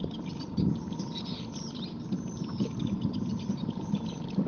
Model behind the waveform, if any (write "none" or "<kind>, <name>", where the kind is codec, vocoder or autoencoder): vocoder, BigVGAN v2